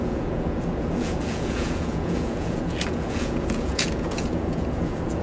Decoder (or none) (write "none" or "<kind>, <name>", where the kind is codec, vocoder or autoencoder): vocoder, Vocos